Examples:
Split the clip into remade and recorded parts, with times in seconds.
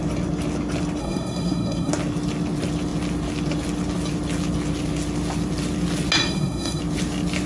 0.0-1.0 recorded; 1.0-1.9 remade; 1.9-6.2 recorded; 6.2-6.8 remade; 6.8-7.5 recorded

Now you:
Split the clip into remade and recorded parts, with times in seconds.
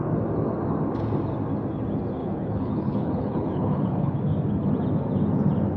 0.0-2.2 recorded; 2.2-4.2 remade; 4.2-5.8 recorded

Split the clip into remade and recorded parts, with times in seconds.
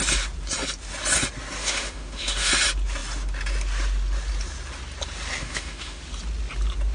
0.0-1.6 recorded; 1.6-2.5 remade; 2.5-5.4 recorded; 5.4-6.0 remade; 6.0-6.9 recorded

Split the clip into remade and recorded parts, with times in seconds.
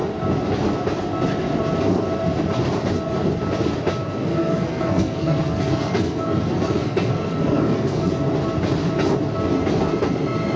0.0-4.3 recorded; 4.3-8.1 remade; 8.1-10.6 recorded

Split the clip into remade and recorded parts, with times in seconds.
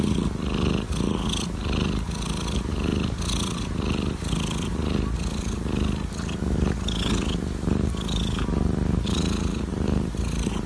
0.0-9.7 recorded; 9.7-10.7 remade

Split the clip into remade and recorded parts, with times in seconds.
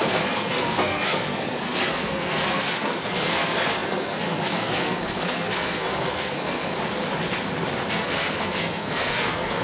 0.0-6.7 remade; 6.7-7.9 recorded; 7.9-9.6 remade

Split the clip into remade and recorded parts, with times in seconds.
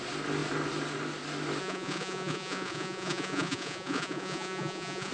0.0-1.6 recorded; 1.6-5.1 remade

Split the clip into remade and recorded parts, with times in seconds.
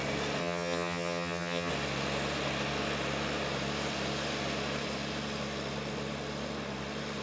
0.0-0.4 recorded; 0.4-1.7 remade; 1.7-7.2 recorded